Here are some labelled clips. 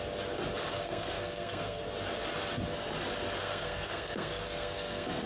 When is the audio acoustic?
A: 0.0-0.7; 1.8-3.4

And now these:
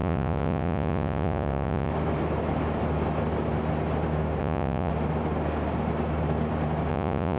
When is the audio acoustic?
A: 1.9-4.4; 4.9-6.9

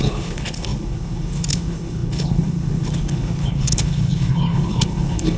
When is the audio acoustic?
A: none

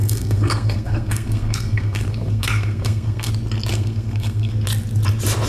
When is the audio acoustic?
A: 3.3-3.7; 4.5-5.5

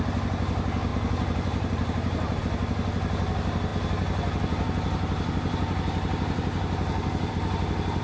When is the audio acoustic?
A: 0.0-0.9; 2.4-8.0

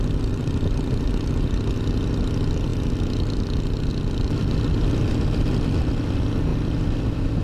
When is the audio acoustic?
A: 0.0-7.4

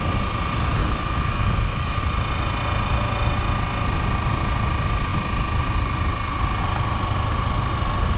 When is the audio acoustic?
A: 0.0-0.8; 2.0-8.2